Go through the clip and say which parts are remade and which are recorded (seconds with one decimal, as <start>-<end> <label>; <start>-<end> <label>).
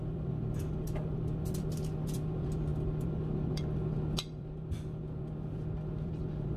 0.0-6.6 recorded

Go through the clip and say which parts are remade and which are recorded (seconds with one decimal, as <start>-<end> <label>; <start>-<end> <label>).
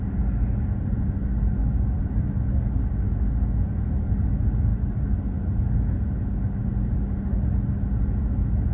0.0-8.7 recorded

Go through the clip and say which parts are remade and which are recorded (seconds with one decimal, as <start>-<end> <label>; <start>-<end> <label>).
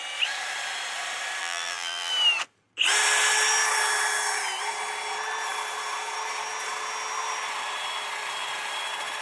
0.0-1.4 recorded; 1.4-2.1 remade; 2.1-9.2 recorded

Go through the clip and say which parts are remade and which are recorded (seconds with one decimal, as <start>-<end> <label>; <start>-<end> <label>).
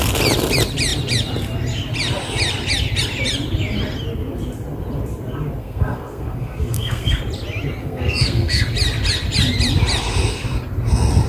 0.0-5.6 recorded; 5.6-7.2 remade; 7.2-7.8 recorded; 7.8-8.6 remade; 8.6-11.3 recorded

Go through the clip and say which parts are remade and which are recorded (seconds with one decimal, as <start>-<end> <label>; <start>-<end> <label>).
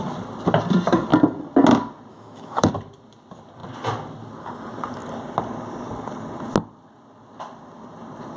0.0-2.1 recorded; 2.1-2.7 remade; 2.7-8.4 recorded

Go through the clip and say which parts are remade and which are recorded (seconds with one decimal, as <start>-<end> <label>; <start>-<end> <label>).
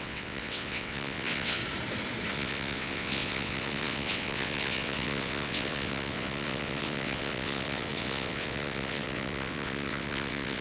0.0-1.6 remade; 1.6-2.3 recorded; 2.3-10.6 remade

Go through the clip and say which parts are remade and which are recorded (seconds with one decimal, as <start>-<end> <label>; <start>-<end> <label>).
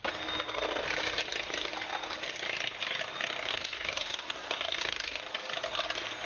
0.0-3.5 recorded; 3.5-5.2 remade; 5.2-6.3 recorded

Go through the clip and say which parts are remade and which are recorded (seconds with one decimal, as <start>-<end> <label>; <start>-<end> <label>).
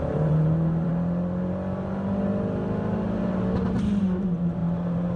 0.0-0.9 remade; 0.9-4.0 recorded; 4.0-5.2 remade